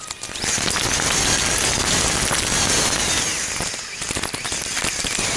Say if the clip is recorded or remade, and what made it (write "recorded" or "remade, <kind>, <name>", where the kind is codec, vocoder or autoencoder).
recorded